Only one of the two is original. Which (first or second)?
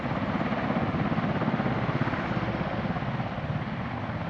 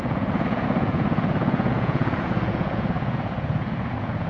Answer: first